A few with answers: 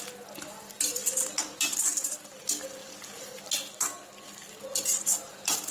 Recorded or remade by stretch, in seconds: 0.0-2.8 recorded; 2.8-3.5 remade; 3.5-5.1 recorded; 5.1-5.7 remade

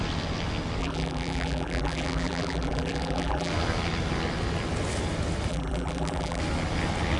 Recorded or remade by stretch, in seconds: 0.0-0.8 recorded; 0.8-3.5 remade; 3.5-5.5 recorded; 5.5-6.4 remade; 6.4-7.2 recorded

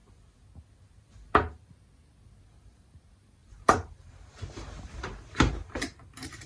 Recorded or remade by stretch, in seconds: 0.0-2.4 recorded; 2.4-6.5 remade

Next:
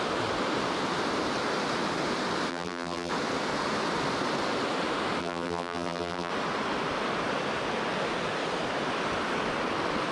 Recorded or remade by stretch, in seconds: 0.0-2.5 recorded; 2.5-3.1 remade; 3.1-5.2 recorded; 5.2-6.3 remade; 6.3-10.1 recorded